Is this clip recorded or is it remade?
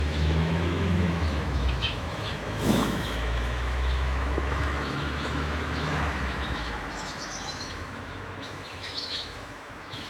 remade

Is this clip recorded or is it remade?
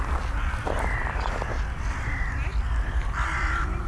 recorded